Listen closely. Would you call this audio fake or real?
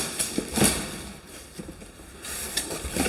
fake